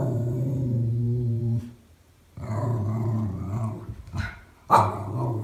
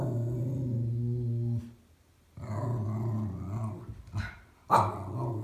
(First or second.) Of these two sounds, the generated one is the first